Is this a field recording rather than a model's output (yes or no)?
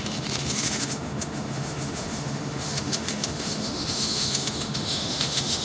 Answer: no